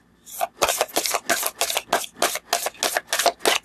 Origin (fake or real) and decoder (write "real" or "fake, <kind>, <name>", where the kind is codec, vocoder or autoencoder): real